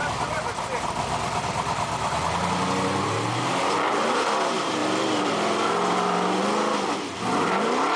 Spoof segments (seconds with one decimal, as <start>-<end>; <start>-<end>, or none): 0.0-0.8; 4.8-6.4